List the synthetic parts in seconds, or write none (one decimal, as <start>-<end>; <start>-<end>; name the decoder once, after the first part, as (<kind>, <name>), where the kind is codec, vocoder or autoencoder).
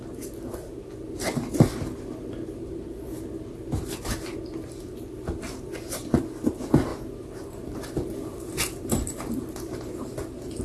none